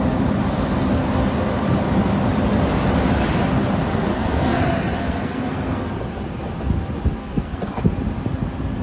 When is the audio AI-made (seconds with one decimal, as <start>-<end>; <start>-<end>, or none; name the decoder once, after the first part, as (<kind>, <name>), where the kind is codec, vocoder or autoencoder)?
4.1-4.6 (codec, SNAC); 5.0-5.9; 7.2-7.8